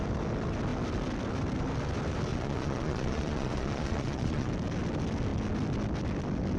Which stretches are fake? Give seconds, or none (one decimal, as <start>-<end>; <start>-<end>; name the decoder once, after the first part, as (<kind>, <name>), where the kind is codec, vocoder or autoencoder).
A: 2.3-4.5 (vocoder, Vocos)